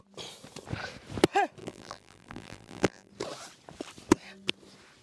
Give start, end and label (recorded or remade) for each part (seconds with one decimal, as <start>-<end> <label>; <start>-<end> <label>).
0.0-1.6 recorded; 1.6-3.1 remade; 3.1-5.0 recorded